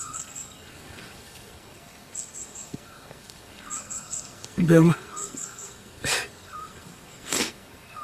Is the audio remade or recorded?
remade